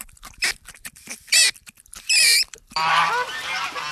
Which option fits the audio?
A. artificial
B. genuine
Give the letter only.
A